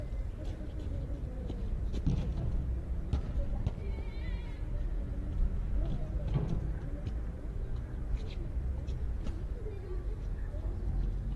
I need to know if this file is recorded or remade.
recorded